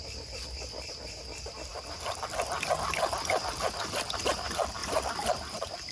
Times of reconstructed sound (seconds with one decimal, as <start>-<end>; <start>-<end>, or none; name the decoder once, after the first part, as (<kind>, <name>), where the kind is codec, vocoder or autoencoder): 4.8-5.9 (vocoder, BigVGAN v2)